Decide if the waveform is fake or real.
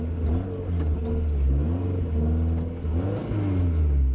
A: real